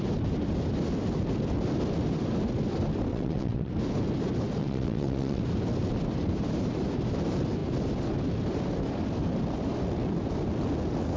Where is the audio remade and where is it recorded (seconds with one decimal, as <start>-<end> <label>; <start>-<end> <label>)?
0.0-3.1 recorded; 3.1-3.7 remade; 3.7-4.6 recorded; 4.6-5.4 remade; 5.4-11.2 recorded